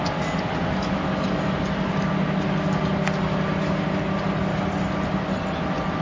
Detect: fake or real real